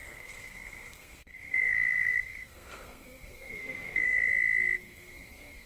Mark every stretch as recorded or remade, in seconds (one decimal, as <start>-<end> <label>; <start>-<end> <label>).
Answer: 0.0-4.3 remade; 4.3-4.8 recorded; 4.8-5.7 remade